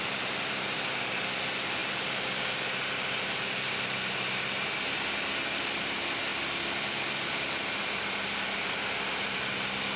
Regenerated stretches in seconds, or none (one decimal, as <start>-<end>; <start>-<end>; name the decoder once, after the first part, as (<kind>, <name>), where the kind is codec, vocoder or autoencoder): none